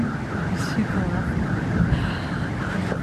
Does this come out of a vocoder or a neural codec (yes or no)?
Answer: no